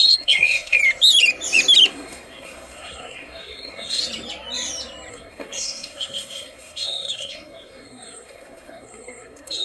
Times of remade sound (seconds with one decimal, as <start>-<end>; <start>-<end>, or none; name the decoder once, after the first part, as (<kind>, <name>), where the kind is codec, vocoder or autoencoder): 0.0-0.8 (codec, SNAC); 1.9-4.0; 5.1-9.6